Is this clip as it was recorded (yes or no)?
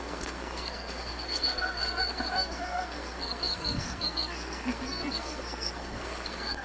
no